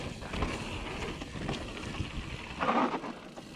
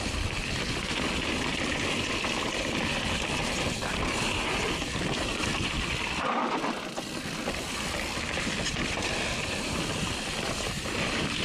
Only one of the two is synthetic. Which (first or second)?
second